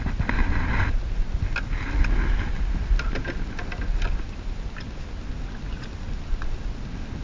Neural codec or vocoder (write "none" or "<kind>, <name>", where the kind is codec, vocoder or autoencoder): none